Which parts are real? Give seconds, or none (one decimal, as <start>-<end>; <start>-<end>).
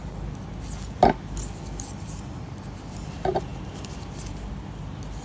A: 0.0-5.2